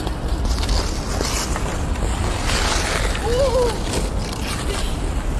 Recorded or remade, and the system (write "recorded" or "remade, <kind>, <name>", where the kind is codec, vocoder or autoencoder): recorded